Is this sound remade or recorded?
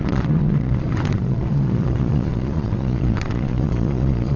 remade